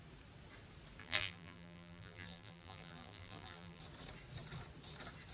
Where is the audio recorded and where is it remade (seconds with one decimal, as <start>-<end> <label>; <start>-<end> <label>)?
0.0-1.0 recorded; 1.0-3.8 remade; 3.8-5.3 recorded